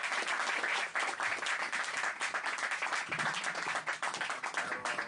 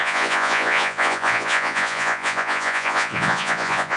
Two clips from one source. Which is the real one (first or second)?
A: first